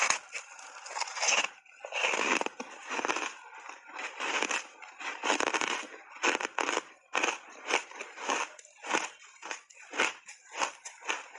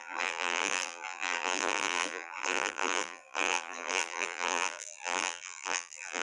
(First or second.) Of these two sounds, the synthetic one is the second